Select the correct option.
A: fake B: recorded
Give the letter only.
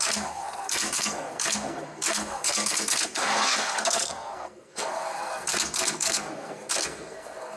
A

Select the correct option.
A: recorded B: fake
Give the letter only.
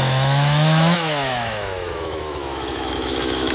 B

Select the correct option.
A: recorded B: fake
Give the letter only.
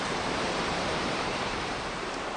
B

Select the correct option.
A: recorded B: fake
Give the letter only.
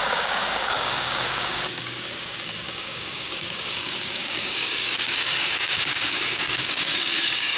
B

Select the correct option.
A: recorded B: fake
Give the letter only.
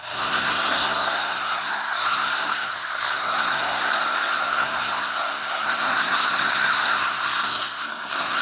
B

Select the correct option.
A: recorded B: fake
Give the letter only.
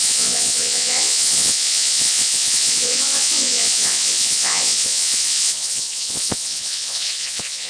B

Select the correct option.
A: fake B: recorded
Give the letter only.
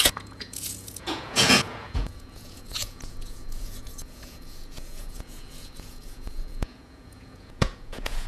A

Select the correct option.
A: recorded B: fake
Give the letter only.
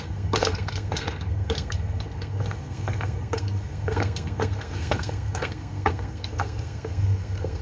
B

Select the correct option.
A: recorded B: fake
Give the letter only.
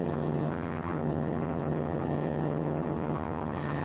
B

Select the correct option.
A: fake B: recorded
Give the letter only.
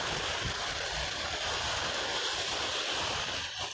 B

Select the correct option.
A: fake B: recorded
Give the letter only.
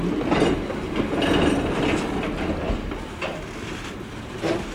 B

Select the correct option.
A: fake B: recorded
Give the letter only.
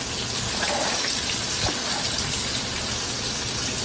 B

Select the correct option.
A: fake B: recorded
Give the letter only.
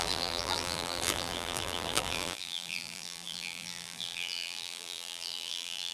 A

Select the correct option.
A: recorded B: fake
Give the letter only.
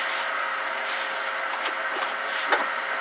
A